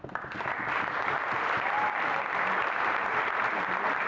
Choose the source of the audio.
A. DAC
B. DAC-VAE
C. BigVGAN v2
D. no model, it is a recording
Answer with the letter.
C